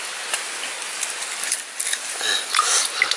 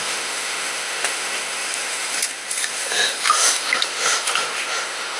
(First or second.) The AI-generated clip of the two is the second